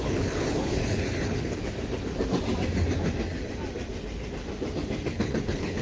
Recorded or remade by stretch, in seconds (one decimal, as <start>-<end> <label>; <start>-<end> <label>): 0.0-1.6 remade; 1.6-5.1 recorded; 5.1-5.8 remade